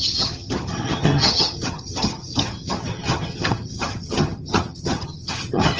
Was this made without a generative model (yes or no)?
no